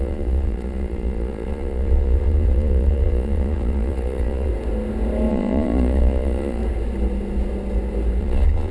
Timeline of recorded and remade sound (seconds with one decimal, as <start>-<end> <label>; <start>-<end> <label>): 0.0-4.5 remade; 4.5-5.3 recorded; 5.3-6.6 remade; 6.6-8.2 recorded; 8.2-8.7 remade

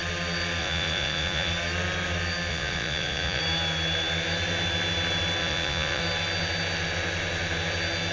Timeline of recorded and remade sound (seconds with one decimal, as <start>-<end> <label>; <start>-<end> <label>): 0.0-0.6 recorded; 0.6-1.5 remade; 1.5-2.5 recorded; 2.5-3.4 remade; 3.4-5.4 recorded; 5.4-6.0 remade; 6.0-8.1 recorded

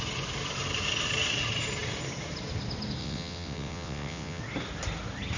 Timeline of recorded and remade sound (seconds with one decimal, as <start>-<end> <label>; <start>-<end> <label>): 0.0-3.0 recorded; 3.0-4.4 remade; 4.4-5.4 recorded